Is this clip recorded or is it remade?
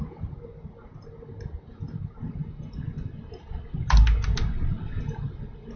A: recorded